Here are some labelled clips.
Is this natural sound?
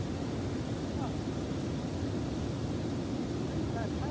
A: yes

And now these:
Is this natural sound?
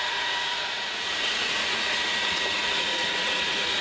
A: no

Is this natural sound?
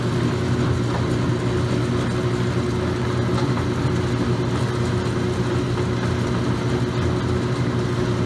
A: yes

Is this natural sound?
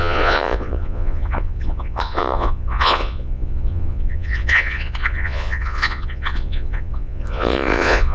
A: no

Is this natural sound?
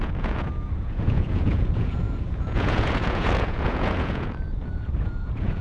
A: no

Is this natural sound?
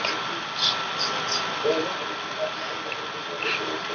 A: yes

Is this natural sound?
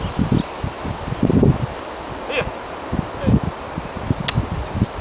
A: yes